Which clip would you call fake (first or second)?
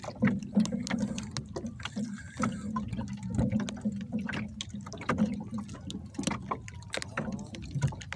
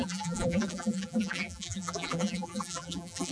second